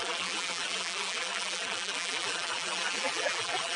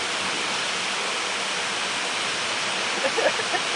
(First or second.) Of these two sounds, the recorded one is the second